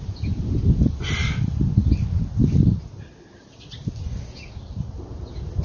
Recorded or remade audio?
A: recorded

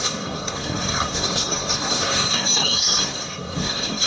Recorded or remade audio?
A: remade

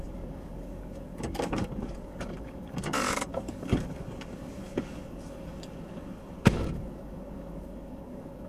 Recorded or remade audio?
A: remade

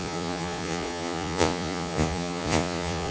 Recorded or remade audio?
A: remade